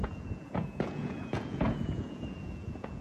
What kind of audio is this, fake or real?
fake